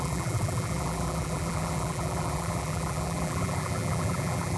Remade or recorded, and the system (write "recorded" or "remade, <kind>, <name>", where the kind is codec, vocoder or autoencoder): remade, vocoder, BigVGAN v2